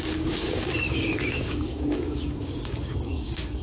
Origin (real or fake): fake